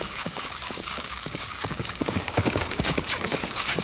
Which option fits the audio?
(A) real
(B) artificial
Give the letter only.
B